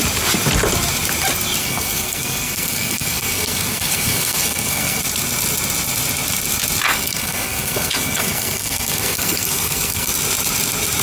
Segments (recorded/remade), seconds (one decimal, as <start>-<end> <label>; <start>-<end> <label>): 0.0-1.6 recorded; 1.6-5.0 remade; 5.0-6.9 recorded; 6.9-10.1 remade; 10.1-11.0 recorded

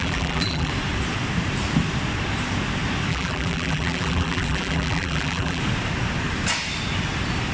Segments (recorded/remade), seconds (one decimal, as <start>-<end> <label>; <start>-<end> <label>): 0.0-0.7 remade; 0.7-3.1 recorded; 3.1-5.6 remade; 5.6-7.5 recorded